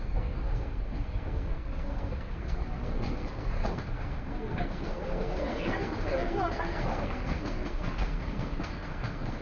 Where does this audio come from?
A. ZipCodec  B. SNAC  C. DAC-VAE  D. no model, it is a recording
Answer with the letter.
B